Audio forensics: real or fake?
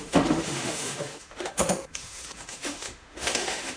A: fake